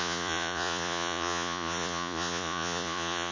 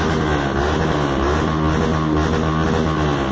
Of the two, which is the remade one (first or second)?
first